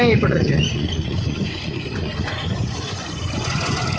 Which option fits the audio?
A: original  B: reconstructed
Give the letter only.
B